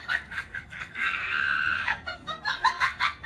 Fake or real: fake